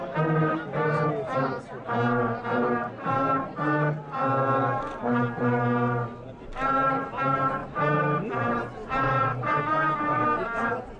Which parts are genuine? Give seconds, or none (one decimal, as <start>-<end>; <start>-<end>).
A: 0.0-7.6; 9.6-11.0